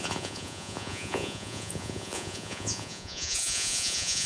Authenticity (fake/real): fake